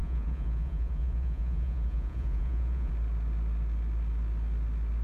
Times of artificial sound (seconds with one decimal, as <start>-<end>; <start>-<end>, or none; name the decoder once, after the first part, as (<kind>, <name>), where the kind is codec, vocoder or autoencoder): 0.0-2.9 (vocoder, Vocos)